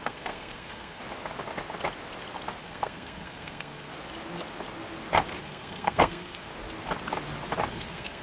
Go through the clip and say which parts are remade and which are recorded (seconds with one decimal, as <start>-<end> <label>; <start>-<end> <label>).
0.0-1.0 remade; 1.0-2.6 recorded; 2.6-3.9 remade; 3.9-5.4 recorded; 5.4-6.5 remade; 6.5-7.7 recorded; 7.7-8.2 remade